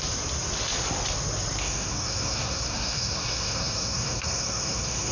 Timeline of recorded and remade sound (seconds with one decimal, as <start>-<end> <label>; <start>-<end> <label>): 0.0-1.6 recorded; 1.6-5.1 remade

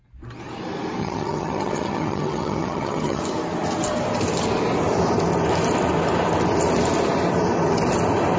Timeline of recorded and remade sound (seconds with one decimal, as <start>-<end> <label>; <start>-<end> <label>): 0.0-1.0 recorded; 1.0-3.2 remade; 3.2-8.4 recorded

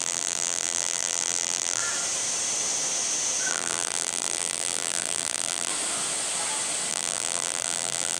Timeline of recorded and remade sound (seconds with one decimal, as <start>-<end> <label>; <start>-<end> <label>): 0.0-1.8 remade; 1.8-3.5 recorded; 3.5-5.7 remade; 5.7-6.9 recorded; 6.9-8.2 remade

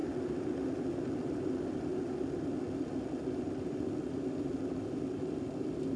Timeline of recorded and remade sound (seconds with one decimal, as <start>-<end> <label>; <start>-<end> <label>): 0.0-6.0 recorded

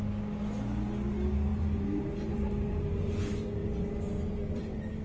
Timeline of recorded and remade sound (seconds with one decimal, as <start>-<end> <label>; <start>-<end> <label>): 0.0-1.5 recorded; 1.5-3.1 remade; 3.1-5.0 recorded

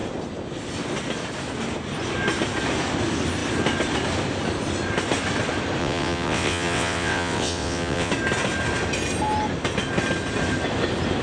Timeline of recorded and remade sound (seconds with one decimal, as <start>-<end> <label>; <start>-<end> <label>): 0.0-5.8 recorded; 5.8-8.1 remade; 8.1-11.2 recorded

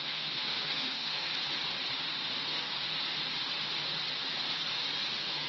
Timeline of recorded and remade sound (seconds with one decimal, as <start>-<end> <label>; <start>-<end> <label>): 0.0-1.3 remade; 1.3-2.3 recorded; 2.3-2.7 remade; 2.7-5.1 recorded; 5.1-5.5 remade